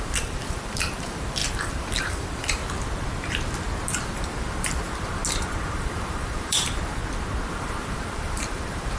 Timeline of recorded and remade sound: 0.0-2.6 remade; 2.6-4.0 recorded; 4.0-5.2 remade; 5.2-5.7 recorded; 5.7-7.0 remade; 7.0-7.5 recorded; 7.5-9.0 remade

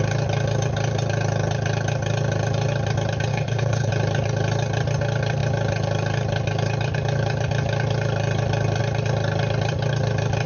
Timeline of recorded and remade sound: 0.0-3.3 recorded; 3.3-3.9 remade; 3.9-10.5 recorded

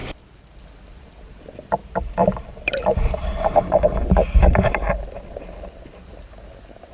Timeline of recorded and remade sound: 0.0-0.6 remade; 0.6-1.8 recorded; 1.8-4.8 remade; 4.8-6.9 recorded

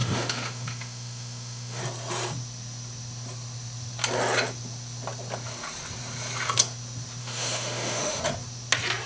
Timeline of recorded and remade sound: 0.0-1.8 remade; 1.8-7.2 recorded; 7.2-8.2 remade; 8.2-9.1 recorded

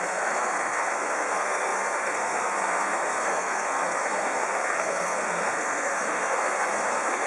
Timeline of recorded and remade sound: 0.0-7.3 remade